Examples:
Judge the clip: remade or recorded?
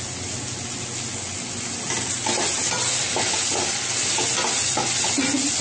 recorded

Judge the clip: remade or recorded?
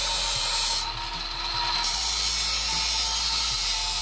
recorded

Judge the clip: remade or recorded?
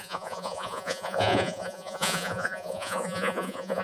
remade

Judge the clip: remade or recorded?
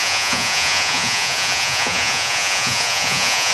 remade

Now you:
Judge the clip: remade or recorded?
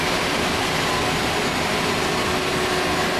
recorded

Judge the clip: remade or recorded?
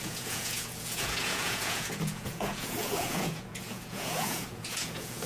remade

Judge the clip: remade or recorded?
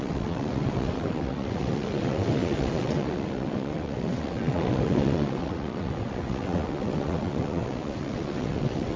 remade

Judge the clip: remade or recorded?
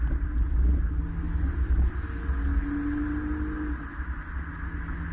recorded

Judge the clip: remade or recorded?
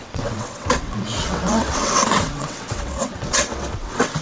remade